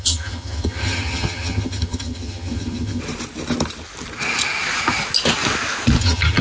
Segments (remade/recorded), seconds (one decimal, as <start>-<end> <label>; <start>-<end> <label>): 0.0-3.0 remade; 3.0-6.0 recorded; 6.0-6.4 remade

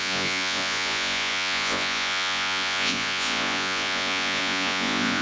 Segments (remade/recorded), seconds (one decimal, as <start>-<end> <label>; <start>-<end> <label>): 0.0-5.2 remade

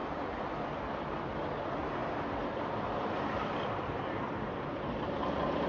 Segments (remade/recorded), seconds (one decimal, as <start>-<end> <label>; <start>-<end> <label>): 0.0-5.7 recorded

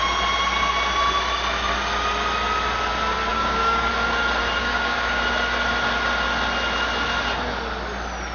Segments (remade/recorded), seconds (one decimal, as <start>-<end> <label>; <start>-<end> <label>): 0.0-3.3 recorded; 3.3-3.9 remade; 3.9-4.6 recorded; 4.6-5.2 remade; 5.2-8.3 recorded

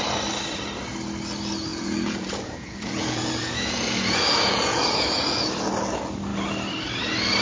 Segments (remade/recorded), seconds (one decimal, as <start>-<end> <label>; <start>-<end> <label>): 0.0-1.7 recorded; 1.7-5.5 remade; 5.5-7.4 recorded

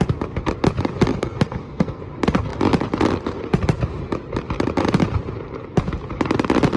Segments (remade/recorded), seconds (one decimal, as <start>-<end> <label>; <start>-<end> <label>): 0.0-1.1 recorded; 1.1-2.0 remade; 2.0-6.8 recorded